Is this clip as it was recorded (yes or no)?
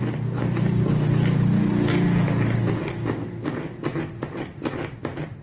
yes